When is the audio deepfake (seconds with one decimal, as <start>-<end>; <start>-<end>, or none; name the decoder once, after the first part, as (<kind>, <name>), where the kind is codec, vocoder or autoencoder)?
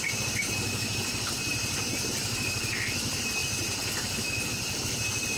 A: none